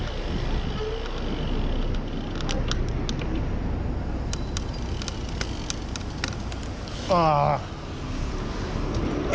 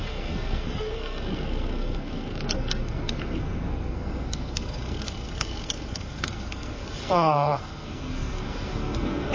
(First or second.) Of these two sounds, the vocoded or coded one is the second